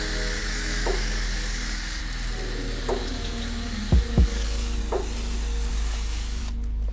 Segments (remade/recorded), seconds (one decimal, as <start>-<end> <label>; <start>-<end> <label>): 0.0-0.4 recorded; 0.4-2.0 remade; 2.0-3.0 recorded; 3.0-4.8 remade; 4.8-5.7 recorded; 5.7-6.4 remade; 6.4-6.9 recorded